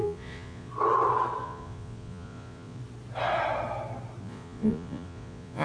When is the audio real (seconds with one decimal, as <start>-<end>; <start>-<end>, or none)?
0.7-1.4; 2.8-4.2